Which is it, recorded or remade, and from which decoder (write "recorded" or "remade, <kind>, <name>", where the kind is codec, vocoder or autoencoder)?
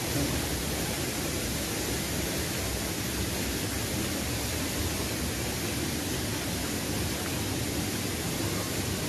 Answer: recorded